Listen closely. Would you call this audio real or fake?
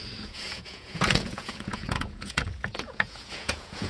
fake